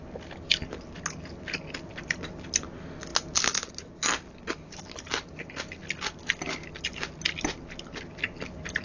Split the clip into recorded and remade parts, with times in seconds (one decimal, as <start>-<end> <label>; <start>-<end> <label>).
0.0-8.8 recorded